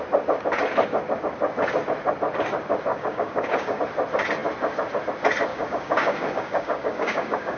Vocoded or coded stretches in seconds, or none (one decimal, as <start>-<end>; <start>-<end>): 2.9-3.8; 5.5-7.6